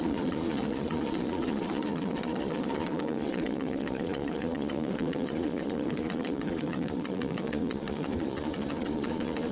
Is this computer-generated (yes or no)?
yes